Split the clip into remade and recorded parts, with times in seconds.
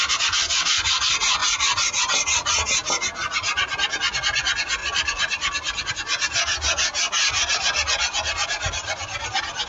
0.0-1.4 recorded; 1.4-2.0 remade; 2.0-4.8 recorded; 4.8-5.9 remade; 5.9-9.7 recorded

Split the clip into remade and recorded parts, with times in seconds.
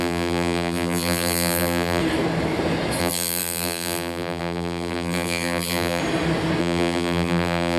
0.0-2.0 remade; 2.0-3.0 recorded; 3.0-6.0 remade; 6.0-6.6 recorded; 6.6-7.8 remade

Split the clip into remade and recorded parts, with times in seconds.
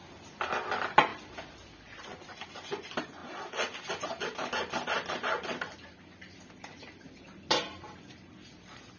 0.0-9.0 recorded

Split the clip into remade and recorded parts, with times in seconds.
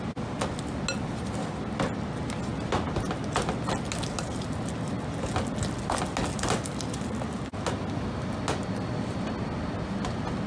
0.0-10.5 recorded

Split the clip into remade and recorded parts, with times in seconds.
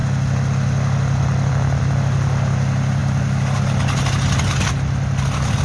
0.0-5.6 recorded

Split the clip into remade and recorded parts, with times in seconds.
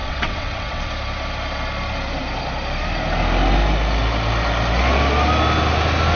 0.0-0.9 remade; 0.9-6.2 recorded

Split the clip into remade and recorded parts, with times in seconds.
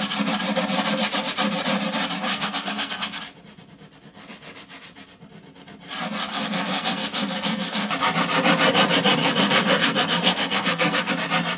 0.0-2.3 recorded; 2.3-3.2 remade; 3.2-6.3 recorded; 6.3-7.9 remade; 7.9-9.2 recorded; 9.2-11.1 remade; 11.1-11.6 recorded